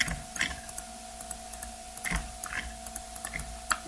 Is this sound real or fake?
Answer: real